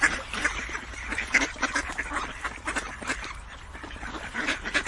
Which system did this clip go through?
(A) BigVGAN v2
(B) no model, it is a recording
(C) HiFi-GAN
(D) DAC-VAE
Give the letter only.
A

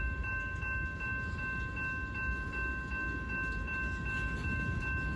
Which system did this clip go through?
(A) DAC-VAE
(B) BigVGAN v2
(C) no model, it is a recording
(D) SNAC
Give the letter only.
C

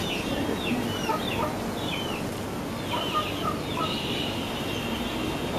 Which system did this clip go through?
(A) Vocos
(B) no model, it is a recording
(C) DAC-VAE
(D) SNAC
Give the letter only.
B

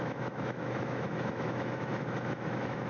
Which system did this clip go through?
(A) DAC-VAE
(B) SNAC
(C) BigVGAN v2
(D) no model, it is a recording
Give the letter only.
A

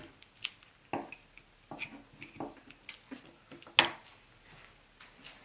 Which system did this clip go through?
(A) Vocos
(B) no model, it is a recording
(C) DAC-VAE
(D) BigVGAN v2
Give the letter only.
B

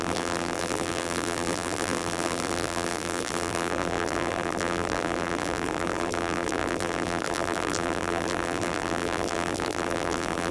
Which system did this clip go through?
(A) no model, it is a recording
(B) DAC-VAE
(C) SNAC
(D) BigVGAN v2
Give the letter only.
D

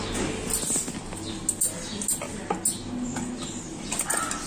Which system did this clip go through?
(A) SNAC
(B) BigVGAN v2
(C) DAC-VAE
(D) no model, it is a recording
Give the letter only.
D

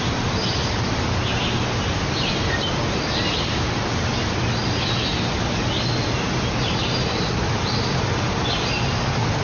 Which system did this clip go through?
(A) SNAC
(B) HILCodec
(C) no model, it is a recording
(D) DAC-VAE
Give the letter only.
C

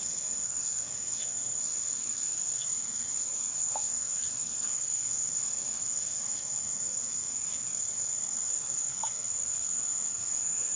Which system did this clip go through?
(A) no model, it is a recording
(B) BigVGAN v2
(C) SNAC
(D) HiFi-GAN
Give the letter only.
C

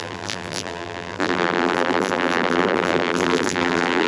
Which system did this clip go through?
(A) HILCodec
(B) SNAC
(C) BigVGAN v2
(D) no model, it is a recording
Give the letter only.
C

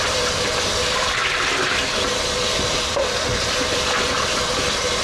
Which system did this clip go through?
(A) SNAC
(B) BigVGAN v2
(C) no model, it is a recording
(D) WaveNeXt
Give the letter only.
C